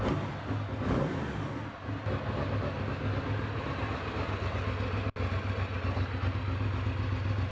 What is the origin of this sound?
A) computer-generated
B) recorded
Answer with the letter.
B